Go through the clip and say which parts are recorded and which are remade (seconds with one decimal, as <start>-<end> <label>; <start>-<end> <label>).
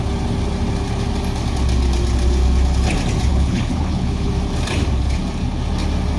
0.0-3.3 recorded; 3.3-4.3 remade; 4.3-6.2 recorded